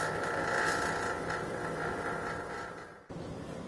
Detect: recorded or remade recorded